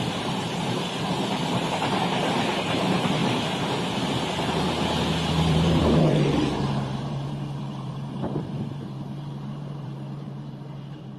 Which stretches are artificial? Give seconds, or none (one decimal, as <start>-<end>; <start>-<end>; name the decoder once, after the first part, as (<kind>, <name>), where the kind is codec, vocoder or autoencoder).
0.0-3.2 (vocoder, BigVGAN v2); 5.3-11.2